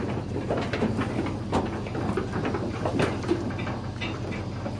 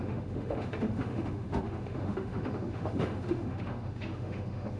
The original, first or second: first